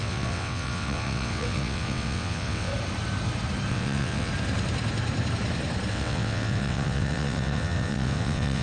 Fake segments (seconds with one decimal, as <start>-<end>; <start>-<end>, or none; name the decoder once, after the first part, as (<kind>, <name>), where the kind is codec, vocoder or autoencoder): 0.0-2.7 (vocoder, WaveNeXt); 3.7-4.3; 5.9-8.6